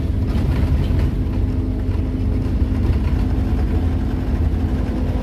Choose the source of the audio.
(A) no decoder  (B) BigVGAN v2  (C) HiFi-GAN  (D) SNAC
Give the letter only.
A